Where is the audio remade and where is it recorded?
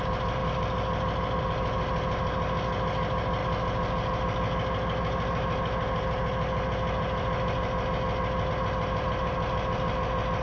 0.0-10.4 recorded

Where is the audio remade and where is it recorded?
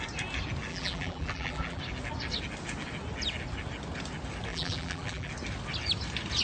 0.0-0.7 recorded; 0.7-1.8 remade; 1.8-4.5 recorded; 4.5-5.3 remade; 5.3-6.4 recorded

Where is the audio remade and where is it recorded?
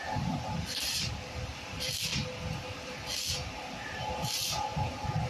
0.0-2.1 remade; 2.1-4.0 recorded; 4.0-4.7 remade; 4.7-5.3 recorded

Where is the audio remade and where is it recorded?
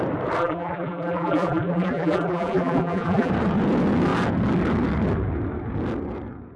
0.0-0.4 recorded; 0.4-3.3 remade; 3.3-6.6 recorded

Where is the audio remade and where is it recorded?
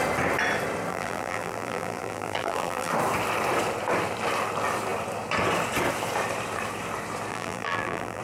0.0-0.9 recorded; 0.9-2.9 remade; 2.9-7.3 recorded; 7.3-8.2 remade